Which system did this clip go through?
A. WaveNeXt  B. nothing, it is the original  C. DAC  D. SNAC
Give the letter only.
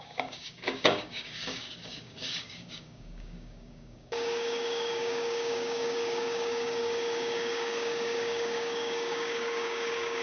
C